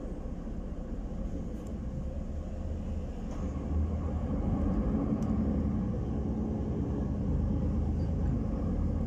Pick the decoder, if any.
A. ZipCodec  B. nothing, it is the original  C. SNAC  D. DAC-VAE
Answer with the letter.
B